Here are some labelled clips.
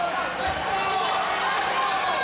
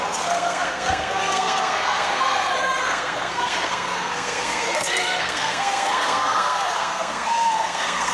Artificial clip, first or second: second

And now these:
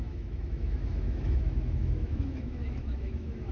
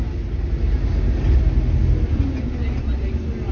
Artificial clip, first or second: first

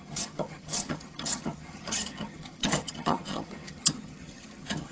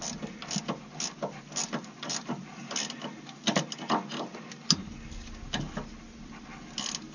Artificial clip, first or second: first